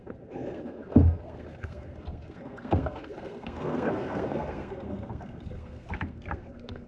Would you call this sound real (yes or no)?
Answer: no